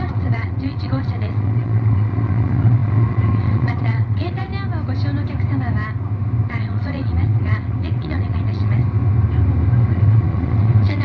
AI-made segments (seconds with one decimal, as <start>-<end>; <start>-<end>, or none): 0.0-4.5; 6.5-8.8; 9.9-11.0